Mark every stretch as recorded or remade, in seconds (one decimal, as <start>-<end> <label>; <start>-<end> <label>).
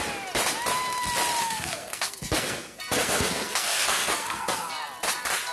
0.0-1.4 recorded; 1.4-4.7 remade; 4.7-5.5 recorded